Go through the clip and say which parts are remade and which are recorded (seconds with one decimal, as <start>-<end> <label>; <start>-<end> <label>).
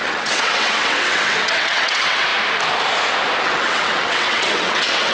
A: 0.0-2.3 remade; 2.3-3.4 recorded; 3.4-5.1 remade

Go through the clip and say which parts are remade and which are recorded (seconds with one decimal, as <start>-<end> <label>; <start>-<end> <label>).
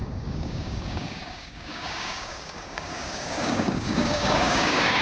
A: 0.0-5.0 remade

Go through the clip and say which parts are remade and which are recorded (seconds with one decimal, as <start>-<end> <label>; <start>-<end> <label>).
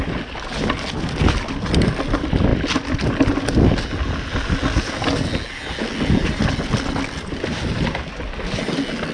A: 0.0-9.1 recorded